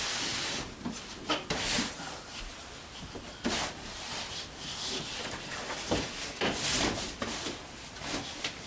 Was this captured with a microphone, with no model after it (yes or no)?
no